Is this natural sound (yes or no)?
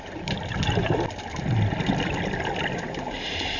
yes